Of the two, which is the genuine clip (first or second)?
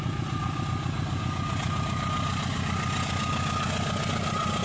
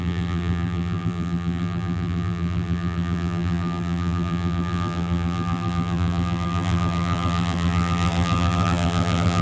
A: first